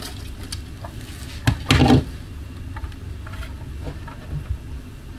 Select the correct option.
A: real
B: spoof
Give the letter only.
A